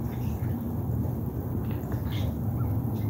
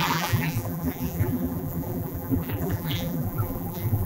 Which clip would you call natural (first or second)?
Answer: first